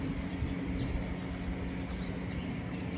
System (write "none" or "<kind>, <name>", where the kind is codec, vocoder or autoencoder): none